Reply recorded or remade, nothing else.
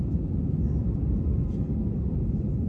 recorded